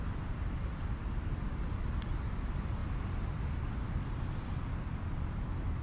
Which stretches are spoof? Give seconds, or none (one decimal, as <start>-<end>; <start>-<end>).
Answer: none